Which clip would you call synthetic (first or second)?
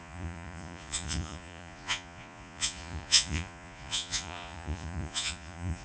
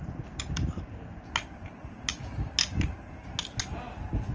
first